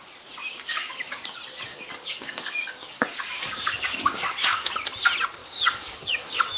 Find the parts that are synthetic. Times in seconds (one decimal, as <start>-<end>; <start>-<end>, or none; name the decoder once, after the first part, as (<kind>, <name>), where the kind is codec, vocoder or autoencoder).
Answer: 0.4-1.1 (codec, DAC); 1.7-4.7; 5.4-6.6